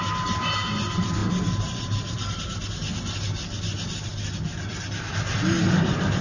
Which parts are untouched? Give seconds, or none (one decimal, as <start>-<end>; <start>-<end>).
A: 0.0-6.2